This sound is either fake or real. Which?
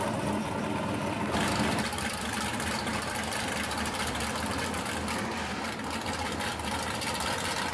fake